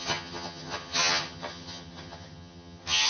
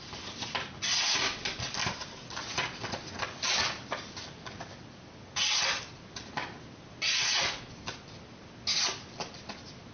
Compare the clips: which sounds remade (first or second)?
first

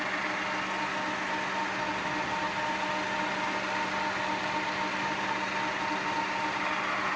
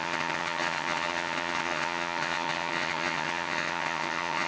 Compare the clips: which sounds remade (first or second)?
second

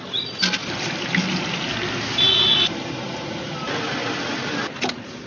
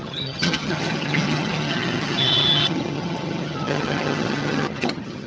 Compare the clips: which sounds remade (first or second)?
second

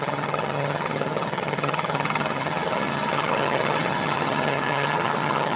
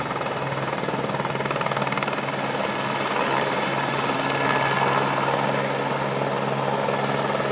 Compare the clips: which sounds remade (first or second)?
first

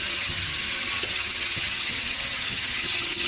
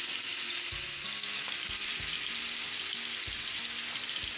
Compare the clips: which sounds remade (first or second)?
first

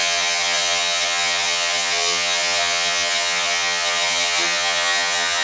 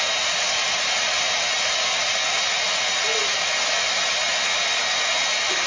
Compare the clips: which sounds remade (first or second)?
first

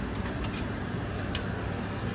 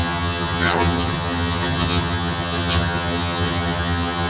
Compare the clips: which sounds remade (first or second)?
second